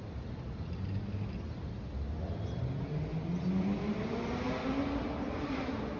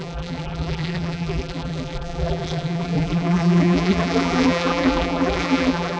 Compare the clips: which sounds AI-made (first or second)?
second